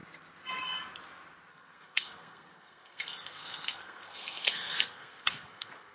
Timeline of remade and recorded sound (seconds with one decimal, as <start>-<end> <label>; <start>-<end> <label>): 0.0-1.5 recorded; 1.5-5.9 remade